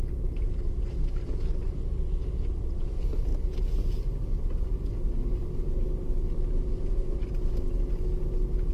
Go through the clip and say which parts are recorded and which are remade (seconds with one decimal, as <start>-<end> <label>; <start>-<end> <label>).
0.0-8.7 recorded